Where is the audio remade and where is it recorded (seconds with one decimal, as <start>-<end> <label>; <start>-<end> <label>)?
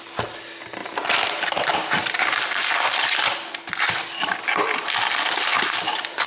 0.0-6.3 recorded